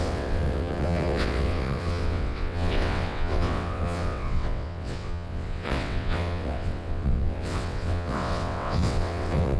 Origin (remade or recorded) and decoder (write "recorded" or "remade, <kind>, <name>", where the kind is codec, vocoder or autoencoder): remade, vocoder, WaveNeXt